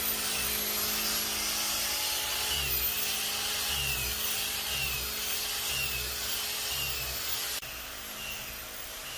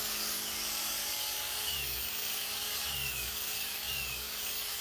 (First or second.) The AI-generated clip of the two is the second